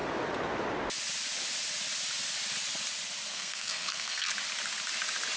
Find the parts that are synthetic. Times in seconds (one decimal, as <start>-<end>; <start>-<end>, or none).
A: 3.3-4.3